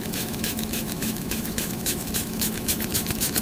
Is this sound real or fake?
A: fake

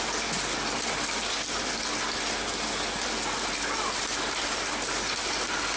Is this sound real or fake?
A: real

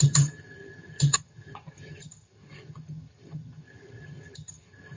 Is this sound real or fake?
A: fake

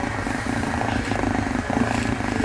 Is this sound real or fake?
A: real